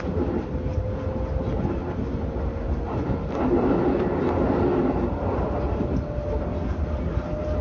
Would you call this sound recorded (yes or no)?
yes